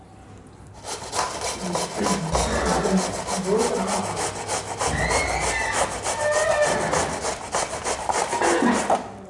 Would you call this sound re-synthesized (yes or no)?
no